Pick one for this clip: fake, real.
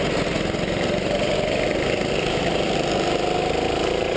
real